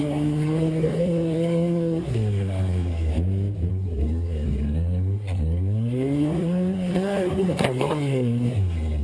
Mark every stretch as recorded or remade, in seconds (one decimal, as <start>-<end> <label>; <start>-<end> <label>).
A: 0.0-3.1 remade; 3.1-3.7 recorded; 3.7-9.0 remade